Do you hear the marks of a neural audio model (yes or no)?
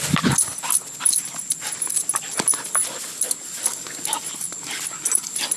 no